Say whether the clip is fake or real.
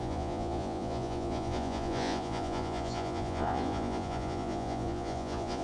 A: fake